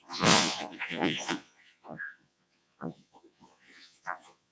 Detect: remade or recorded remade